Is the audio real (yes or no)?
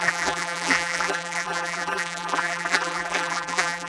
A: no